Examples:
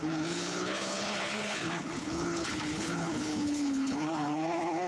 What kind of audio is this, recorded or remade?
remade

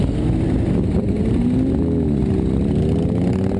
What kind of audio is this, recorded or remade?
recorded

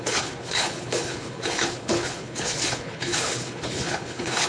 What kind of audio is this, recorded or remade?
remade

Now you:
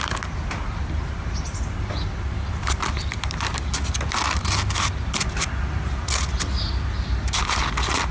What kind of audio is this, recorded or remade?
recorded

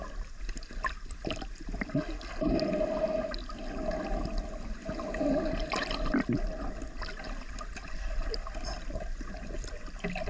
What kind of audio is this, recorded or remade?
recorded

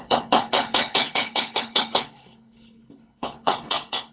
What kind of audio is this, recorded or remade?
remade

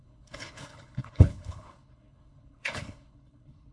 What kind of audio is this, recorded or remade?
remade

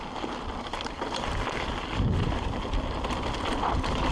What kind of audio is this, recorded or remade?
recorded